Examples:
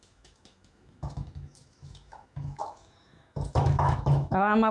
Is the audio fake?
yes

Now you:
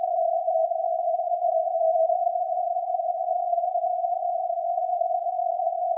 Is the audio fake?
no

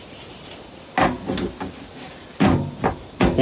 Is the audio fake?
no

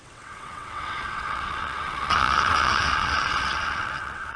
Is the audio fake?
yes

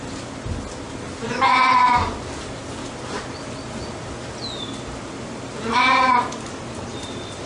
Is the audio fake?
no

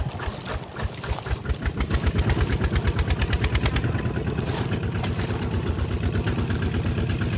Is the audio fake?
no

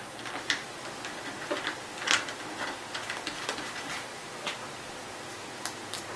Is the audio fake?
no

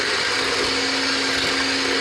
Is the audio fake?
no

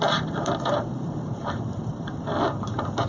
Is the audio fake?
yes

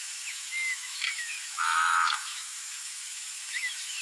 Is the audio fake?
yes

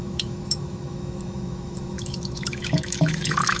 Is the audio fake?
yes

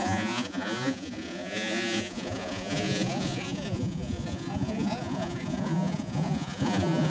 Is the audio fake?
yes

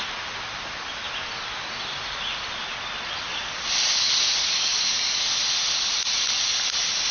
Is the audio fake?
no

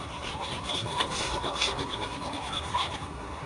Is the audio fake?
yes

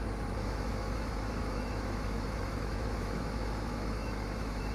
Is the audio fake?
yes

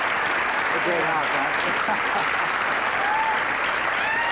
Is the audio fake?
no